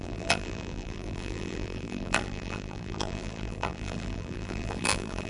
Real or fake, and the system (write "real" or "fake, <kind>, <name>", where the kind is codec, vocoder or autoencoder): fake, vocoder, BigVGAN v2